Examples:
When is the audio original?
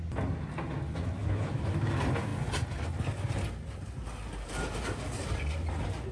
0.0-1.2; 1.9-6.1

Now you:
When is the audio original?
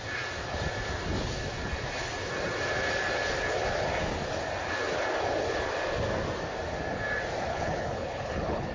0.0-7.5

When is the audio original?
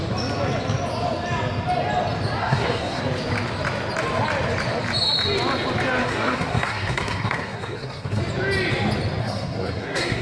0.0-2.4; 3.0-6.0; 8.2-9.2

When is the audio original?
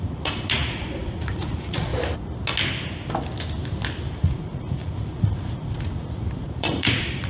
1.9-4.3